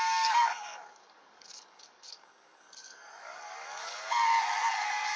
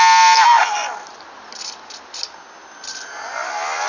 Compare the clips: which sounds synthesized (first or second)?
first